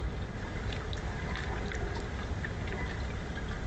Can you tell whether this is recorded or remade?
recorded